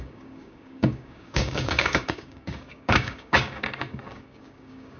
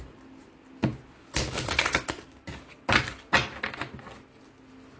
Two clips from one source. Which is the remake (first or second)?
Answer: first